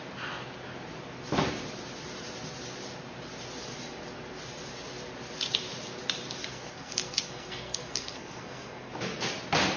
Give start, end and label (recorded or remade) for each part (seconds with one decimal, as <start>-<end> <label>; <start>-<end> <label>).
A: 0.0-6.5 recorded; 6.5-8.9 remade; 8.9-9.8 recorded